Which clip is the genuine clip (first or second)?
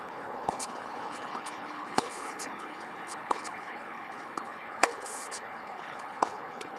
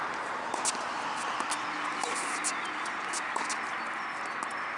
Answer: second